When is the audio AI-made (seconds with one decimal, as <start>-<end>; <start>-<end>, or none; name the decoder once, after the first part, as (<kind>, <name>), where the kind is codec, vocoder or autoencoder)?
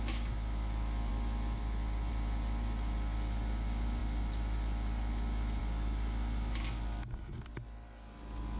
none